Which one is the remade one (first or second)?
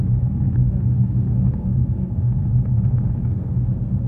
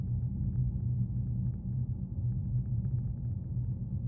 first